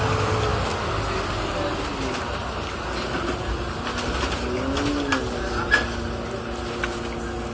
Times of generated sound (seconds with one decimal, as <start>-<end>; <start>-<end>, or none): 0.5-1.5